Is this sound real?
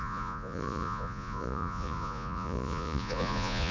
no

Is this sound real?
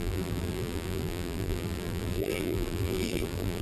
no